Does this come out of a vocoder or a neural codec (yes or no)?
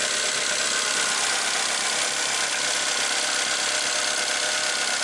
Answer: no